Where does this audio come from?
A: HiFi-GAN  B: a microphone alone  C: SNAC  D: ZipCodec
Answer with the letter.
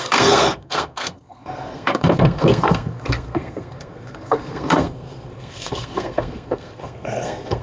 C